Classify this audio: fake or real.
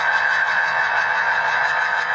fake